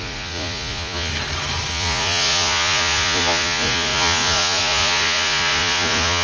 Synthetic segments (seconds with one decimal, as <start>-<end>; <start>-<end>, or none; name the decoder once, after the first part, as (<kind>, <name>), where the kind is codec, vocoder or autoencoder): 0.0-1.1 (vocoder, Vocos); 1.7-6.2